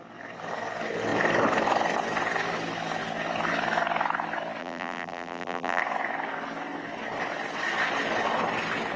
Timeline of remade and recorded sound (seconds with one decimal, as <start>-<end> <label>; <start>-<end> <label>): 0.0-4.6 recorded; 4.6-5.8 remade; 5.8-9.0 recorded